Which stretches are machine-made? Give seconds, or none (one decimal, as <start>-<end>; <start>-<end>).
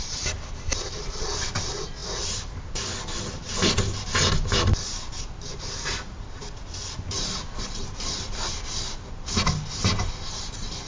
0.0-10.9